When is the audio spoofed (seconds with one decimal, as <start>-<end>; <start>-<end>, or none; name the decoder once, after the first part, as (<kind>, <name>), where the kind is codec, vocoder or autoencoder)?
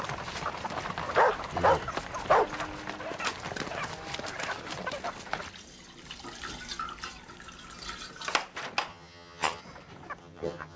8.9-9.6 (vocoder, HiFi-GAN); 10.2-10.8